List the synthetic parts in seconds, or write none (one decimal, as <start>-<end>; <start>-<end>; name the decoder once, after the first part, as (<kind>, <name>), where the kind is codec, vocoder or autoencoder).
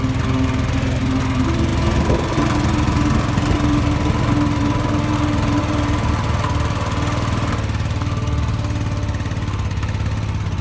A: none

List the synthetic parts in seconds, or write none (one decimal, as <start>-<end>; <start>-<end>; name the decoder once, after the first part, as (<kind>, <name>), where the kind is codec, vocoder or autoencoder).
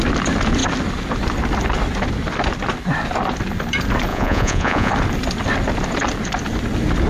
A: 4.1-4.9 (vocoder, Vocos)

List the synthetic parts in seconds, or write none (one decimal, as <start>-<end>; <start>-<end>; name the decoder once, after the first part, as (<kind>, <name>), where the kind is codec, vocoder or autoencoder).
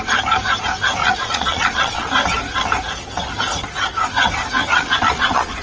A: 1.0-2.1 (vocoder, Vocos); 4.7-5.6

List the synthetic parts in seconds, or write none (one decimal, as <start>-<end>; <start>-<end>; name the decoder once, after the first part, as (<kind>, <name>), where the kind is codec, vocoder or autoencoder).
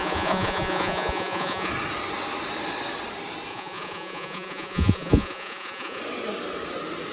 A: 0.0-1.7 (vocoder, Vocos); 3.5-6.0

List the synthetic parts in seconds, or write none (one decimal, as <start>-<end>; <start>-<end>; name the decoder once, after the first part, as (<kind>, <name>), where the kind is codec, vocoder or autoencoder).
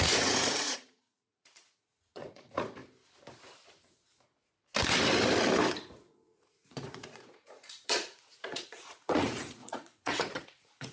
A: 0.0-2.8 (vocoder, Vocos); 5.8-10.9